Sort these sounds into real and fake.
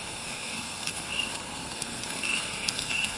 fake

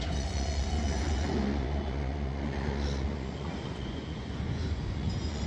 fake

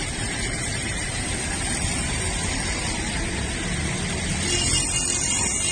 real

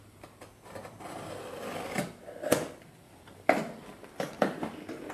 real